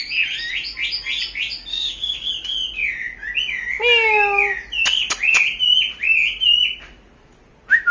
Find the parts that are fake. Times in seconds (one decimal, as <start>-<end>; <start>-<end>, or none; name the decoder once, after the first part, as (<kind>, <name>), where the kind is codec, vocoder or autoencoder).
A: 1.7-2.3 (codec, DAC)